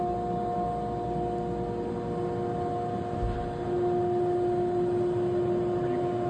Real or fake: real